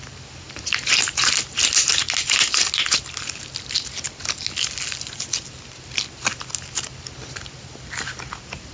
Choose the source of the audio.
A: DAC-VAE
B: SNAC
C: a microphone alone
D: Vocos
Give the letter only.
C